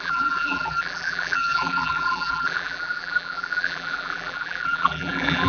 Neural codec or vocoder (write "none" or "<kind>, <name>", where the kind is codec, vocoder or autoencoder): vocoder, BigVGAN v2